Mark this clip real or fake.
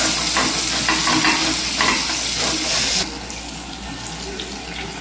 real